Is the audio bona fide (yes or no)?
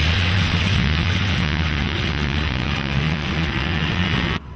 no